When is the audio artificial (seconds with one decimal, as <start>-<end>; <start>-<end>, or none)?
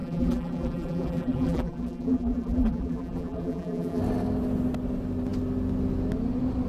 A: 0.0-4.0